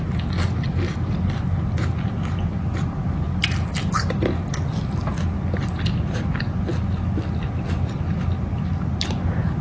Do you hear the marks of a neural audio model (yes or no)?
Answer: no